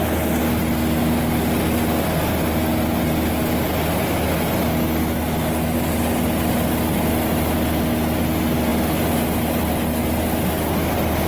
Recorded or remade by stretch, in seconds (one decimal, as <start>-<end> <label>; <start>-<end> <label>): 0.0-11.3 recorded